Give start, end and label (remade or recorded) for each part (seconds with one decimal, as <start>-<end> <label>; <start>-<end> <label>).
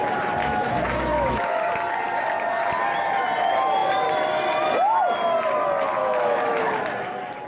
0.0-0.4 recorded; 0.4-1.7 remade; 1.7-6.0 recorded; 6.0-6.7 remade; 6.7-7.5 recorded